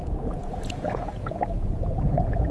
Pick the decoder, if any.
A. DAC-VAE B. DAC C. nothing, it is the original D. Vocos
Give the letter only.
D